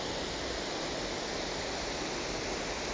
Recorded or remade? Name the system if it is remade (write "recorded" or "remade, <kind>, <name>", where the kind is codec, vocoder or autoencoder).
recorded